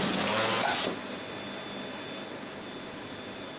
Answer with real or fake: real